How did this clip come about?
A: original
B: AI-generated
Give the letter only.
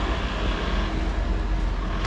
A